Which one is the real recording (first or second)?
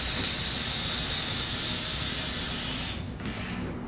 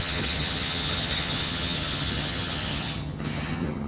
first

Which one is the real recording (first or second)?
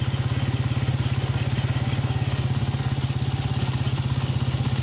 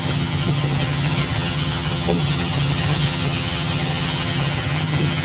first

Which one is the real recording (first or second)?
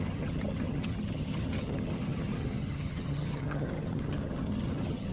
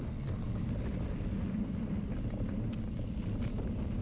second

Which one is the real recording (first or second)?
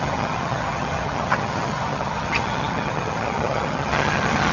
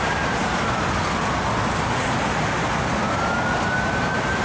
second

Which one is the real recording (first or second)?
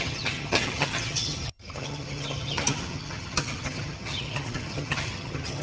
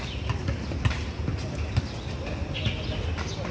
second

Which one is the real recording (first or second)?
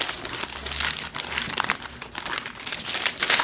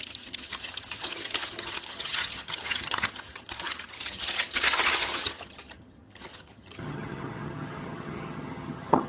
first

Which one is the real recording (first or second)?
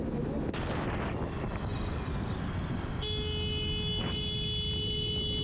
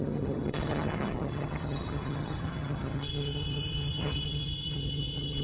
first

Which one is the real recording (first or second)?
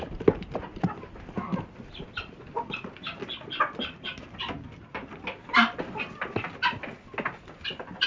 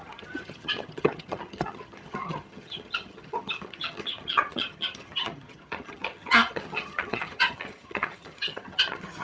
first